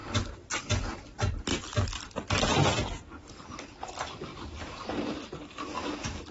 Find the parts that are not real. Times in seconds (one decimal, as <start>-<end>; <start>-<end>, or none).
4.3-4.9